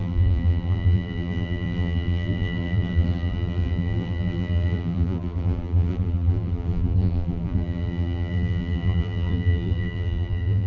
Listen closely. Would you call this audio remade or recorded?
remade